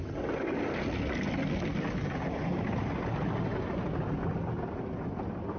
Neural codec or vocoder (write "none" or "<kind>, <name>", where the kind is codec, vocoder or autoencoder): none